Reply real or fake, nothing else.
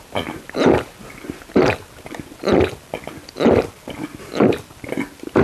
real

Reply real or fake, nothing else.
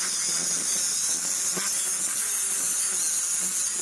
real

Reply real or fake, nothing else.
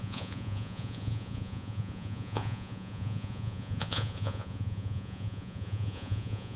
fake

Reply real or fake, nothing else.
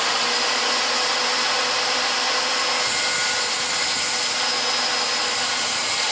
real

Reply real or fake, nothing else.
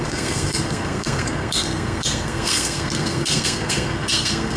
fake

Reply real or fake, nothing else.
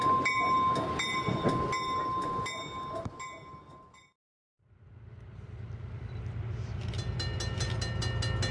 real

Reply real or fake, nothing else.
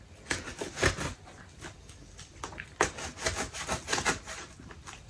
real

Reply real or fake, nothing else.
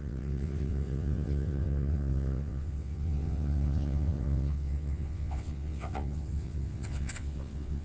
fake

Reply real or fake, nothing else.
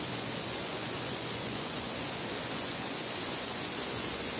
fake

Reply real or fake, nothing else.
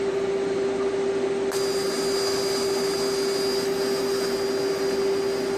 real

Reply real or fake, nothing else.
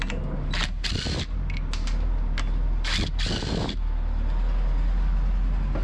real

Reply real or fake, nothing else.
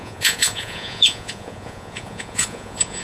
fake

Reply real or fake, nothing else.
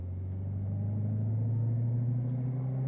real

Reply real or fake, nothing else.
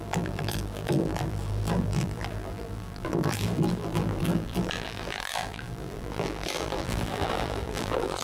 fake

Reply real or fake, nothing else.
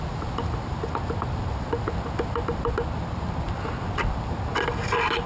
real